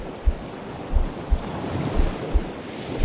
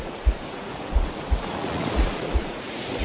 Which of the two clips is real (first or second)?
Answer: first